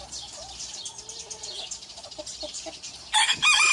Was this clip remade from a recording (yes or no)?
no